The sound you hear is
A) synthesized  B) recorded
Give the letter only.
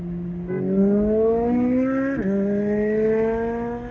B